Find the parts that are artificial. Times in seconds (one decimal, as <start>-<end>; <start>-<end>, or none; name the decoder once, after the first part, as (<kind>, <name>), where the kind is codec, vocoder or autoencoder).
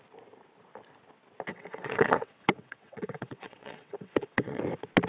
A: 1.5-4.6 (vocoder, WaveNeXt)